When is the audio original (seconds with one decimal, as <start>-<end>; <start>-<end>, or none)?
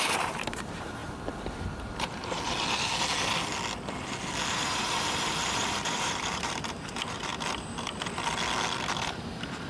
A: 1.0-1.7; 2.2-4.5; 7.3-9.0